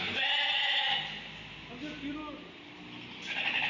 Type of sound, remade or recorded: recorded